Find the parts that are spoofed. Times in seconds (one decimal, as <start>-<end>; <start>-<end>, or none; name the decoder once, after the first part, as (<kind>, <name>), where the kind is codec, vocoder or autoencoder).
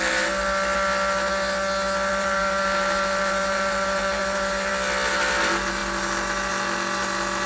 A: 2.1-4.7 (vocoder, BigVGAN v2)